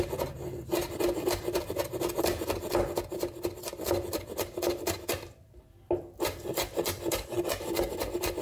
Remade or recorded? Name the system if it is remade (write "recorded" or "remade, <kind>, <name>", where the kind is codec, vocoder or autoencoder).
recorded